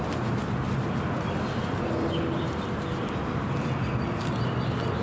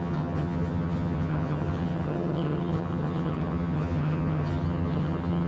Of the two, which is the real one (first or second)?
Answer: first